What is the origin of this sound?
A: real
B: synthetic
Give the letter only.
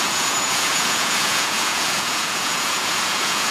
B